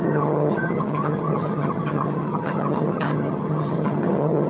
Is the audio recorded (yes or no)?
no